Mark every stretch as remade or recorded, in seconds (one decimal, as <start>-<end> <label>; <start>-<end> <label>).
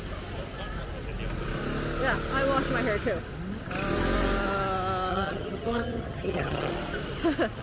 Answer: 0.0-5.1 recorded; 5.1-6.7 remade; 6.7-7.6 recorded